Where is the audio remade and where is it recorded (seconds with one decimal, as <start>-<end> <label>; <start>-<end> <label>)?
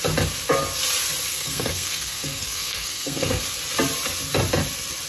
0.0-1.3 recorded; 1.3-3.4 remade; 3.4-5.1 recorded